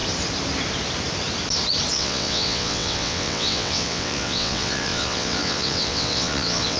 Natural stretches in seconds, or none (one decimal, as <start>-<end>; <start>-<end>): 0.0-1.9